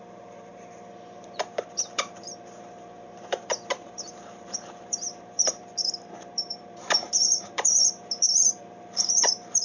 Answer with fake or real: fake